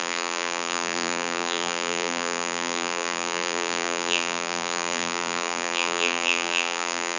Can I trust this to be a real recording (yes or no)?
no